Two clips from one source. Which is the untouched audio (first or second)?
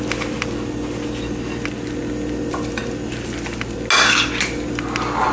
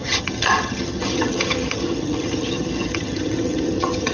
first